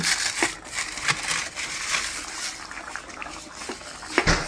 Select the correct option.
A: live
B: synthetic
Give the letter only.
A